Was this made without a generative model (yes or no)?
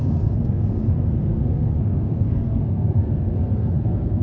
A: no